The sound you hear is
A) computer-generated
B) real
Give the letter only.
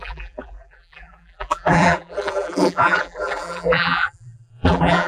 A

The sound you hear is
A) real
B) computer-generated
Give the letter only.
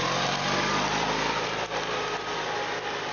A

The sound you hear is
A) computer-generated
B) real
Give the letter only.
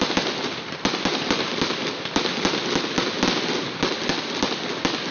B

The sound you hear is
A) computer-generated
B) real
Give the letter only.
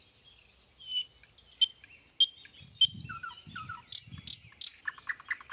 B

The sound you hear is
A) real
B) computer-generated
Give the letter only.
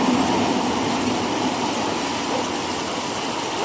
A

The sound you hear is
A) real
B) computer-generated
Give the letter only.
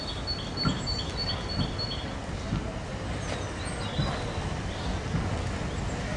A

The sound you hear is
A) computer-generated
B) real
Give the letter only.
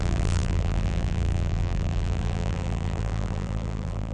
A